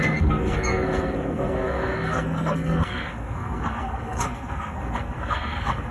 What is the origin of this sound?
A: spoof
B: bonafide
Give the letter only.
A